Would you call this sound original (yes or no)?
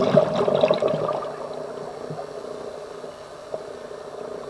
yes